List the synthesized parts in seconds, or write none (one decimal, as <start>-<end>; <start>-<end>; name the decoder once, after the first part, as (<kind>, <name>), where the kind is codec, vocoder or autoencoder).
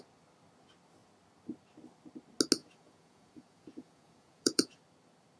2.6-4.8 (vocoder, Vocos)